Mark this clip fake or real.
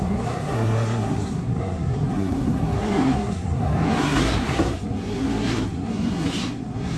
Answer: fake